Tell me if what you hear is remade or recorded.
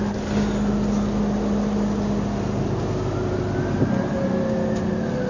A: recorded